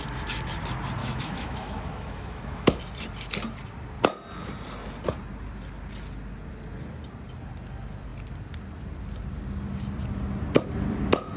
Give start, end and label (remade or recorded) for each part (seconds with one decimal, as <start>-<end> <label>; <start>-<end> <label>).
0.0-1.0 recorded; 1.0-2.8 remade; 2.8-11.4 recorded